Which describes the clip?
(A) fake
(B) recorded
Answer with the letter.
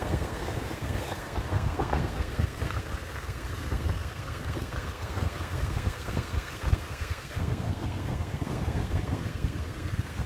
A